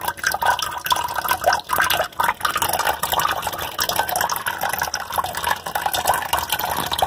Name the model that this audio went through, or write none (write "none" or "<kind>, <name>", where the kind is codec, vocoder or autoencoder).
none